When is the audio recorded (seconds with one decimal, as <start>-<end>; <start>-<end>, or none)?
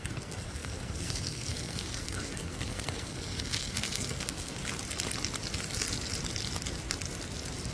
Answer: 4.6-7.7